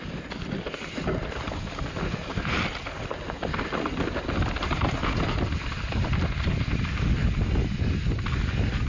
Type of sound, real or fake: real